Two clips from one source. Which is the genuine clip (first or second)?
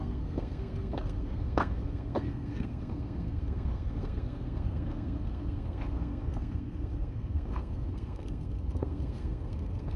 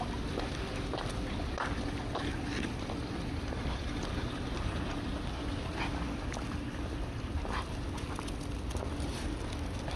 second